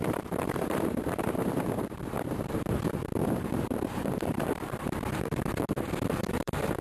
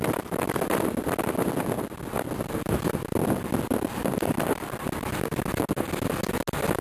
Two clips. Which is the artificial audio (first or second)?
first